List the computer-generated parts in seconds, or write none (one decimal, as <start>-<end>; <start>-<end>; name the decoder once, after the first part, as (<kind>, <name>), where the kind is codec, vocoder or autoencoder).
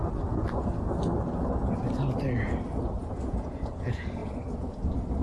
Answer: 3.1-4.2 (vocoder, Vocos)